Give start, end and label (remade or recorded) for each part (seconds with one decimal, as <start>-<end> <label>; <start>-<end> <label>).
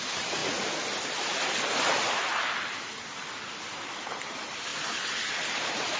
0.0-0.4 remade; 0.4-4.0 recorded; 4.0-6.0 remade